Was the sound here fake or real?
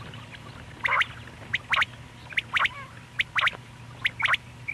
real